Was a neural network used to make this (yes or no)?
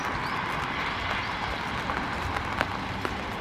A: no